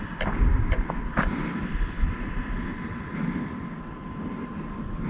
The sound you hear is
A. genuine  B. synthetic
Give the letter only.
A